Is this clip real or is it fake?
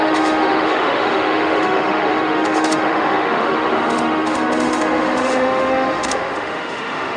fake